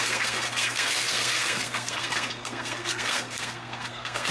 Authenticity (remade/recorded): remade